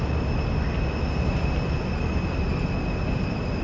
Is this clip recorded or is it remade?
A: recorded